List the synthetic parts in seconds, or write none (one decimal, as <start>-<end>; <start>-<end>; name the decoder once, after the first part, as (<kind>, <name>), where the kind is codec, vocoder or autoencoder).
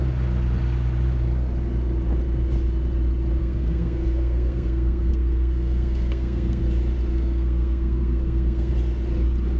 3.4-6.6 (codec, SNAC); 7.1-8.7